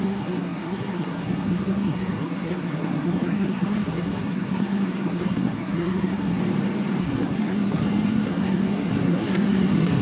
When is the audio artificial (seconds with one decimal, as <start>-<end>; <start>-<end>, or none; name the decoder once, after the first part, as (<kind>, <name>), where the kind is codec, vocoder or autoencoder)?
0.0-6.4 (codec, SNAC); 7.0-10.0